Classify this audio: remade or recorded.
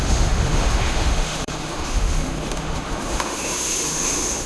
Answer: remade